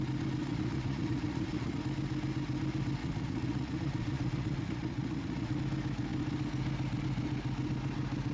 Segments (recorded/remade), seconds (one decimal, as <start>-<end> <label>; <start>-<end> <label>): 0.0-0.4 recorded; 0.4-1.8 remade; 1.8-3.0 recorded; 3.0-5.6 remade; 5.6-8.3 recorded